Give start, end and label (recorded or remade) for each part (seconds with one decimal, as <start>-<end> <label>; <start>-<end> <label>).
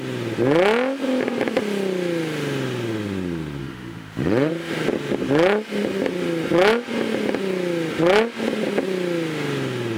0.0-3.6 recorded; 3.6-4.5 remade; 4.5-10.0 recorded